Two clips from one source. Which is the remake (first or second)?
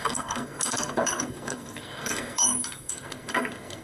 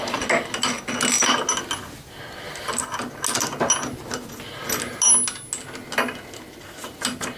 first